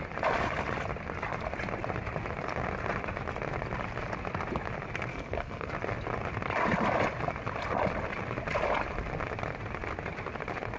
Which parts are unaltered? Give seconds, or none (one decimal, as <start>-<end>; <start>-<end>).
0.0-5.1; 5.7-10.8